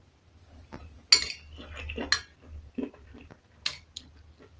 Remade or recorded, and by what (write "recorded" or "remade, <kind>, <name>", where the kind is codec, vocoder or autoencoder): recorded